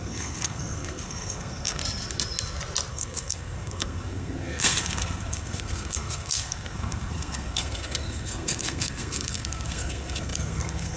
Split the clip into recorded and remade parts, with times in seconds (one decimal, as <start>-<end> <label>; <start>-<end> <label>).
0.0-1.8 remade; 1.8-2.9 recorded; 2.9-11.0 remade